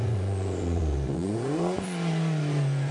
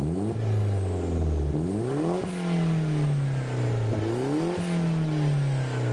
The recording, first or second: second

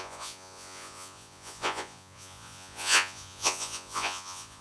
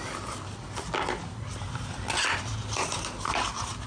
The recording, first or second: second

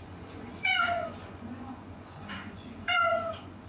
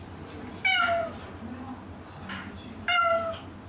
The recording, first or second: second